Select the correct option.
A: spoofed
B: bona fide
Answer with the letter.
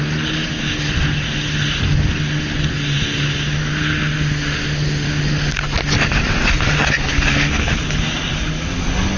B